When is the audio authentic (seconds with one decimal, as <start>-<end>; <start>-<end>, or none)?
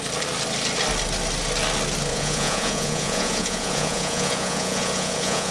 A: 0.0-2.1